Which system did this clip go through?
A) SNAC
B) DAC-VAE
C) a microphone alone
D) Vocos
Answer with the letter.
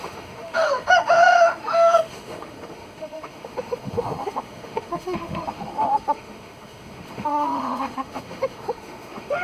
B